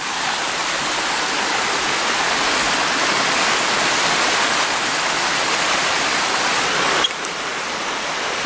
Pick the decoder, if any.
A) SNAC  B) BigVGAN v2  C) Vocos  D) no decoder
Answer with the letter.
D